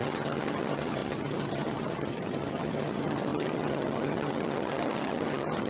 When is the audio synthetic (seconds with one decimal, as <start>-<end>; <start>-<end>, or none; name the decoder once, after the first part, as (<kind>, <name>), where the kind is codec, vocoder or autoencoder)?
0.0-5.7 (vocoder, HiFi-GAN)